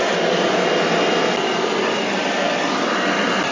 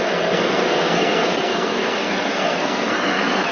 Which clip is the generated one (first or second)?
second